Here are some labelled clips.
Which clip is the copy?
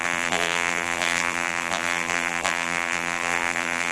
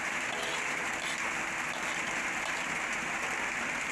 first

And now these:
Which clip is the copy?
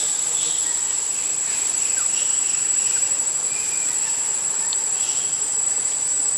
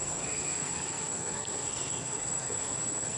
second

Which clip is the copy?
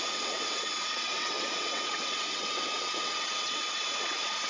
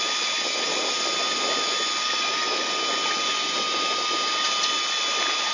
first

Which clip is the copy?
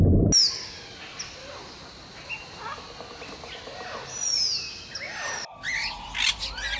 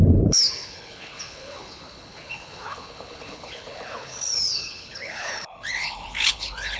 second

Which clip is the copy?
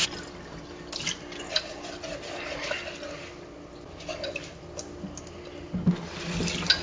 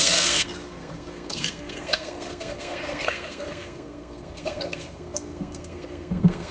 second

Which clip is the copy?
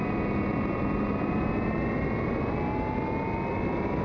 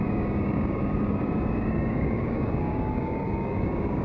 second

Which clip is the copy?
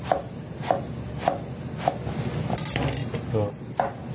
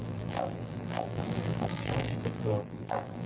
second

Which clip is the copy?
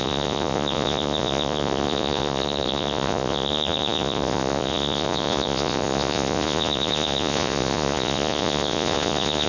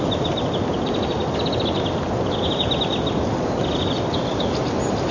first